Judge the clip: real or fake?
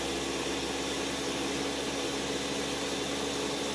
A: real